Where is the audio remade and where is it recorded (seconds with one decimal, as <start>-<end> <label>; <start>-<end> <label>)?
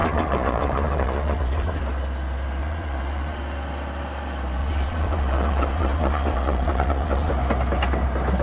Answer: 0.0-1.8 remade; 1.8-2.6 recorded; 2.6-3.4 remade; 3.4-4.6 recorded; 4.6-7.3 remade; 7.3-8.4 recorded